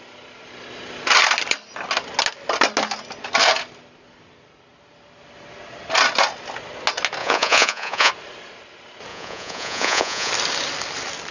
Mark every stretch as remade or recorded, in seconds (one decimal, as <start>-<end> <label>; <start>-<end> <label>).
0.0-7.2 recorded; 7.2-8.1 remade; 8.1-9.1 recorded; 9.1-10.3 remade; 10.3-11.3 recorded